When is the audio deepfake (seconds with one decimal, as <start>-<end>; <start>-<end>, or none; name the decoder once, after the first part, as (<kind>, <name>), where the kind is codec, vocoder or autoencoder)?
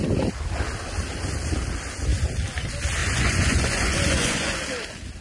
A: 3.0-4.6 (vocoder, Vocos)